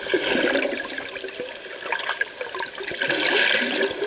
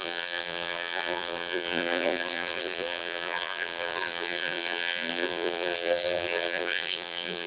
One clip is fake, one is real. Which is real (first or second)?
first